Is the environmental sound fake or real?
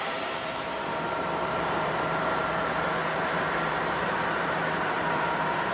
fake